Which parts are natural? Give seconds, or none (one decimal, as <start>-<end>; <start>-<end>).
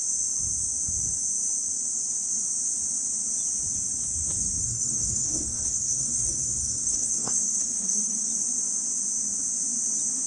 0.0-4.6; 8.3-10.3